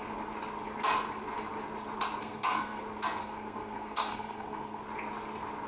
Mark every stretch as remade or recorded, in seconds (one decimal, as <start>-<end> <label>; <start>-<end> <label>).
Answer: 0.0-2.2 recorded; 2.2-2.8 remade; 2.8-3.2 recorded; 3.2-4.8 remade; 4.8-5.7 recorded